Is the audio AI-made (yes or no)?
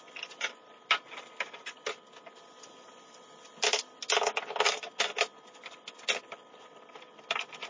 no